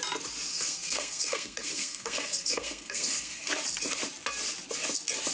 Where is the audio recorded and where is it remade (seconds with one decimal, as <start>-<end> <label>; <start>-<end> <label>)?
0.0-0.5 recorded; 0.5-3.5 remade; 3.5-5.3 recorded